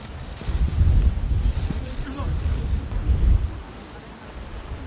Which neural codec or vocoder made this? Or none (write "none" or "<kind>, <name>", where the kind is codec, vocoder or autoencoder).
none